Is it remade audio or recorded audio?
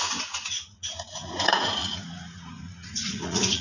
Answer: remade